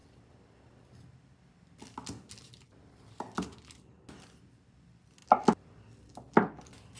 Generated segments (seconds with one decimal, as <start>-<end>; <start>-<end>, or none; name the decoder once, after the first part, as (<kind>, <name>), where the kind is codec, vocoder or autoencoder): none